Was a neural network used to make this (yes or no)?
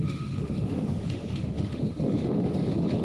yes